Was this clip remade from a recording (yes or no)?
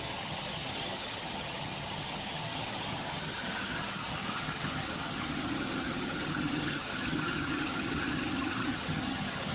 yes